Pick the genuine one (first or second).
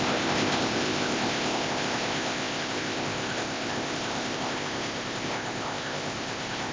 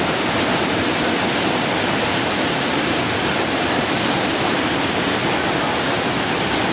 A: second